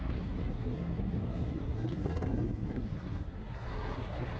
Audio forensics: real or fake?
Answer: fake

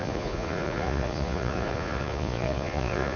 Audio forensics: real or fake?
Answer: fake